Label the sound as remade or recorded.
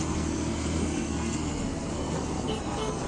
remade